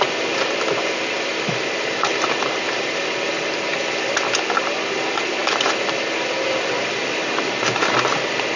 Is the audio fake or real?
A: fake